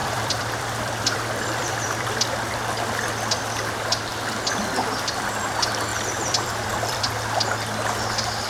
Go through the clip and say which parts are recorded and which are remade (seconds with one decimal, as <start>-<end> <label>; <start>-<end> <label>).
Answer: 0.0-2.2 remade; 2.2-5.9 recorded; 5.9-7.0 remade; 7.0-8.5 recorded